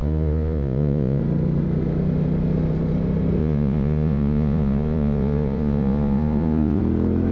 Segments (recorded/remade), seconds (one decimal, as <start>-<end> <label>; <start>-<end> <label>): 0.0-1.2 remade; 1.2-3.4 recorded; 3.4-6.8 remade; 6.8-7.3 recorded